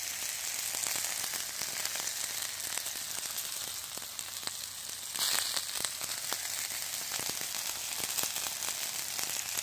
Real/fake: real